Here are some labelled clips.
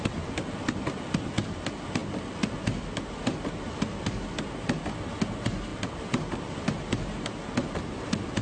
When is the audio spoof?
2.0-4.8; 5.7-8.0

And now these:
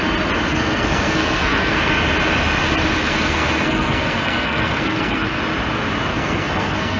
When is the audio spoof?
0.5-1.9; 3.0-5.4; 6.1-7.0

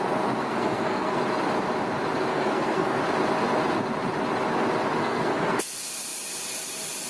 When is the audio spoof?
0.4-1.2; 2.3-3.0; 5.0-5.6

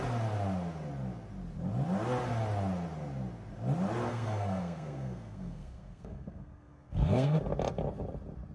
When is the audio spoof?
4.1-7.4

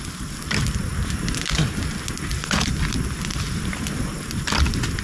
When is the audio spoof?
2.3-4.1

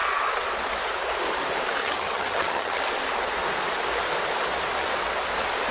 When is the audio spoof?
1.8-2.8

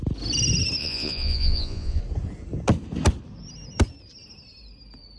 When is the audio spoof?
0.8-2.0